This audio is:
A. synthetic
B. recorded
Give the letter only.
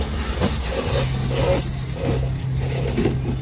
B